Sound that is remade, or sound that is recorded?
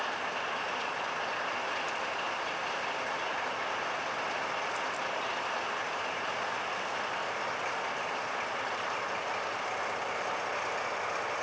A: recorded